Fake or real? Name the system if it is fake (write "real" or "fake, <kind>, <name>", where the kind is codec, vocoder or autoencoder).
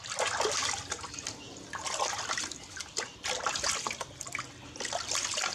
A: real